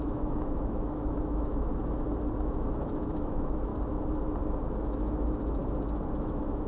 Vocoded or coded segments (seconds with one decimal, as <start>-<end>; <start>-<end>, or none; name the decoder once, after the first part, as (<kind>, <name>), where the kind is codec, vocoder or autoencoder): 0.0-1.7 (autoencoder, DAC-VAE); 2.4-3.7; 4.8-5.6; 6.2-6.7